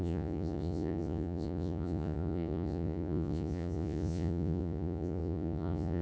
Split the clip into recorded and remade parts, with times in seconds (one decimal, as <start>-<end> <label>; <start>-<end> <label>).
0.0-6.0 remade